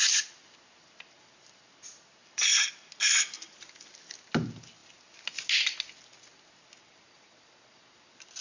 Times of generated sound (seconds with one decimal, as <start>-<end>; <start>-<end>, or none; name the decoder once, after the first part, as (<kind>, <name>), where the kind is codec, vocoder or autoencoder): none